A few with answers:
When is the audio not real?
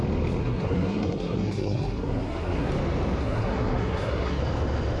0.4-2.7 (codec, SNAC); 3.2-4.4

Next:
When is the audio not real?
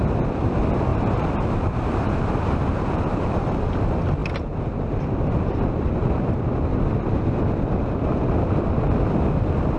0.9-3.6 (vocoder, BigVGAN v2)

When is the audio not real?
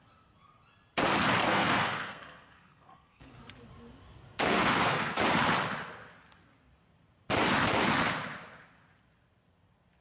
1.4-3.4 (codec, SNAC); 4.5-5.2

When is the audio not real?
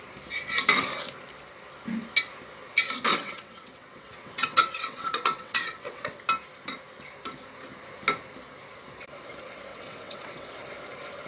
3.1-6.2 (vocoder, WaveNeXt); 9.7-10.5